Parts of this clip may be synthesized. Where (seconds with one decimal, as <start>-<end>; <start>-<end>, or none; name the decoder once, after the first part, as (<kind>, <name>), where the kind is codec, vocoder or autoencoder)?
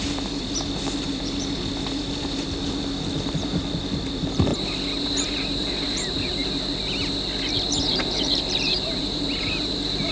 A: 0.0-4.5 (vocoder, BigVGAN v2); 5.0-6.4; 7.8-10.1